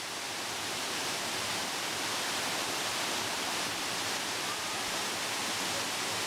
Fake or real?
fake